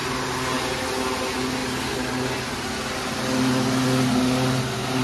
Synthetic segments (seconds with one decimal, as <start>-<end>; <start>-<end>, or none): none